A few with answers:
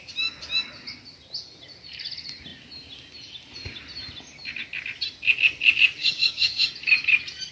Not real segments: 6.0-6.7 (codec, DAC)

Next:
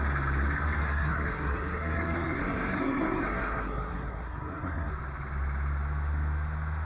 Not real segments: 0.8-4.9 (codec, SNAC)

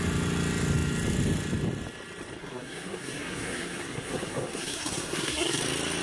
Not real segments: 2.4-5.6 (codec, SNAC)

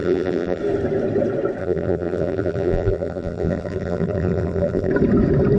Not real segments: 0.0-0.6 (vocoder, BigVGAN v2); 1.6-4.9